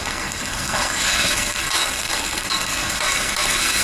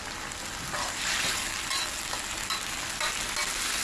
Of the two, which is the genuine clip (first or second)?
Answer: second